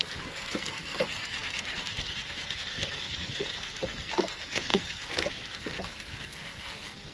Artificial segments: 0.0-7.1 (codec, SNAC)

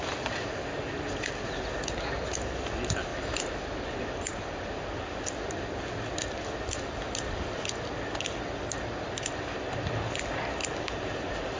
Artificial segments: none